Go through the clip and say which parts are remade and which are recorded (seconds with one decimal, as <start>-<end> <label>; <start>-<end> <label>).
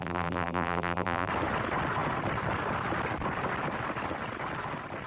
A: 0.0-1.3 remade; 1.3-5.1 recorded